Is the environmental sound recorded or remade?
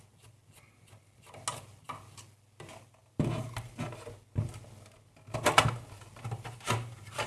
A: recorded